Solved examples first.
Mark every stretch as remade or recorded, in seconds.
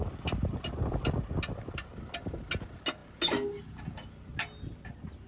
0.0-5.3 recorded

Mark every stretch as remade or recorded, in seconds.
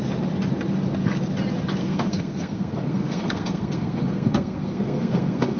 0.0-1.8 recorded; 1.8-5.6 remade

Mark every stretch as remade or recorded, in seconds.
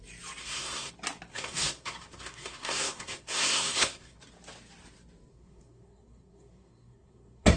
0.0-0.4 recorded; 0.4-0.9 remade; 0.9-1.3 recorded; 1.3-4.2 remade; 4.2-5.3 recorded; 5.3-7.6 remade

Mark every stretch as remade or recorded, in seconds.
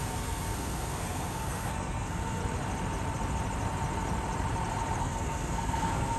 0.0-2.4 remade; 2.4-5.0 recorded; 5.0-6.2 remade